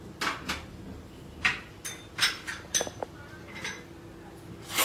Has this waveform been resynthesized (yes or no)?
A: no